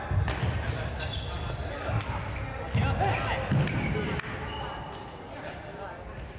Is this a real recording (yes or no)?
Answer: yes